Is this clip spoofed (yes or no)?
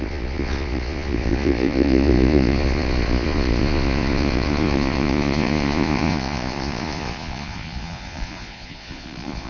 yes